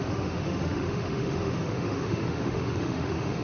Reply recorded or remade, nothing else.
remade